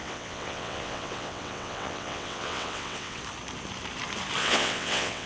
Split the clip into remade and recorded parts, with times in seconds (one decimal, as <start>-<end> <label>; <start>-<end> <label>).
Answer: 0.0-3.2 remade; 3.2-4.4 recorded; 4.4-5.3 remade